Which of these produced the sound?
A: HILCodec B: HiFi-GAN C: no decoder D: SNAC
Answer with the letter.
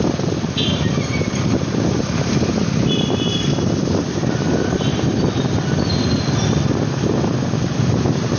C